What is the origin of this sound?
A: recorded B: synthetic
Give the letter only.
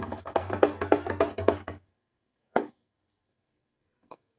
B